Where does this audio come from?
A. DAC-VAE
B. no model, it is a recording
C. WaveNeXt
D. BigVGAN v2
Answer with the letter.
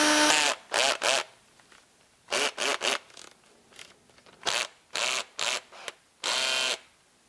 B